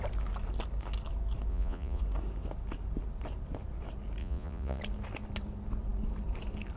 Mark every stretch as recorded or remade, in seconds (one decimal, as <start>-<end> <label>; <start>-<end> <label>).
0.0-1.5 recorded; 1.5-2.0 remade; 2.0-4.2 recorded; 4.2-4.8 remade; 4.8-6.8 recorded